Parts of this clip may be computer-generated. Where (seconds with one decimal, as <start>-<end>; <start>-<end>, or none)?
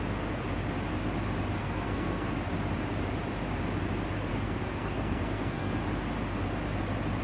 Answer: 1.6-2.3; 4.3-5.8